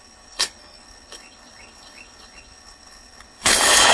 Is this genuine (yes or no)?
no